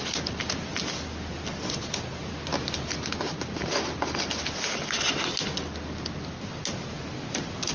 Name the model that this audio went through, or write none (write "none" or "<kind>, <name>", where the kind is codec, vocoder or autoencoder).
none